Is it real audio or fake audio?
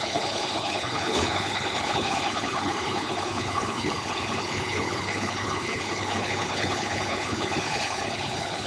fake